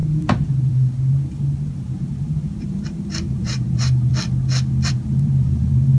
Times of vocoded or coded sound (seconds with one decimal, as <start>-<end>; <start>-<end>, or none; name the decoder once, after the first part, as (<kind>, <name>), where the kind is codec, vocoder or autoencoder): 0.0-4.1 (vocoder, BigVGAN v2); 4.9-6.0

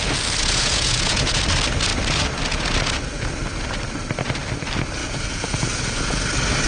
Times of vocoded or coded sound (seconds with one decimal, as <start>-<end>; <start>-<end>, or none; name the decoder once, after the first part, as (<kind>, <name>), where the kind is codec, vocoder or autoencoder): 0.4-1.4 (vocoder, Vocos); 5.0-6.0

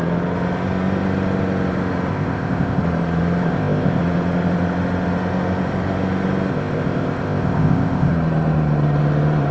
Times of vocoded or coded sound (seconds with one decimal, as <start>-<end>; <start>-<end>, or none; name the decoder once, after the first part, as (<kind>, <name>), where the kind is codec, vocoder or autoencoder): 2.1-2.8 (codec, ZipCodec); 3.5-4.0; 6.5-8.1

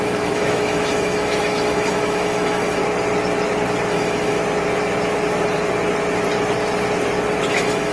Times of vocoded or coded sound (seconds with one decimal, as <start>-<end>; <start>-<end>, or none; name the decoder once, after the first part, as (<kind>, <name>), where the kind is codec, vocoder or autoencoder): 0.0-2.8 (autoencoder, DAC-VAE); 3.9-4.4; 7.5-7.9

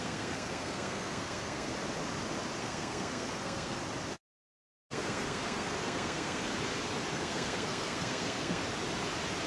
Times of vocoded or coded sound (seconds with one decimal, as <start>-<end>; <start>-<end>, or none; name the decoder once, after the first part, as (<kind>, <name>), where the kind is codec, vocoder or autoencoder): 0.0-1.7 (codec, SNAC); 2.6-3.8; 4.9-6.5; 7.1-8.6